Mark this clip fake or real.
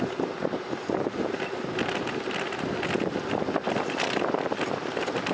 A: real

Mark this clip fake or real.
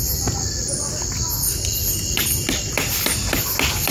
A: real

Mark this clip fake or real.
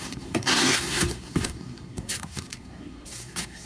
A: fake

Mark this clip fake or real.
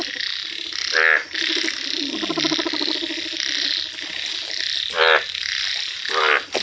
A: real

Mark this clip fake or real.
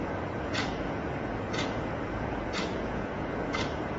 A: fake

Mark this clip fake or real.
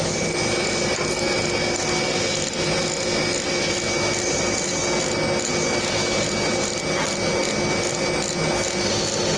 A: real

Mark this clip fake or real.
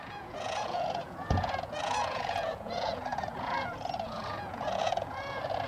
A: fake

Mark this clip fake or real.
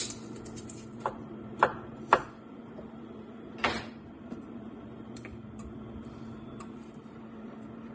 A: fake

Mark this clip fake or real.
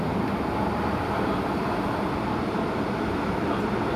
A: real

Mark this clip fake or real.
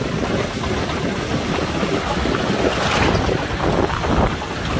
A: real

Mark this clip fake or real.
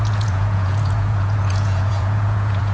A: fake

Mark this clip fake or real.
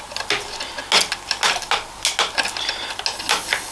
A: real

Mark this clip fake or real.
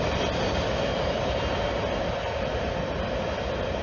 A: real